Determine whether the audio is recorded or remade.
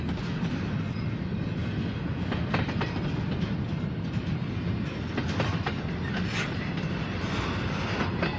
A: recorded